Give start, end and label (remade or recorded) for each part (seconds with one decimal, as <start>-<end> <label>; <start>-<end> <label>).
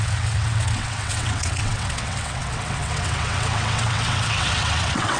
0.0-5.2 remade